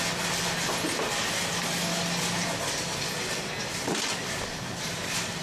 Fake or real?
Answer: real